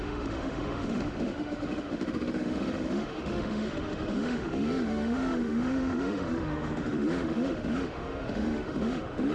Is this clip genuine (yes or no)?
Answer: no